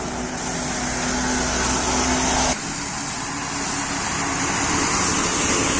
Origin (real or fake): real